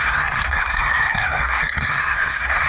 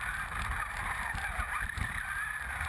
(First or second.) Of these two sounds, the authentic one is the second